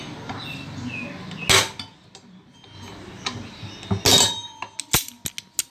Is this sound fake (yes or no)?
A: no